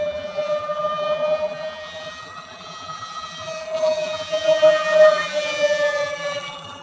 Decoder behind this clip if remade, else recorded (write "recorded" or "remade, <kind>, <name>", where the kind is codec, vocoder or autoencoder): remade, vocoder, BigVGAN v2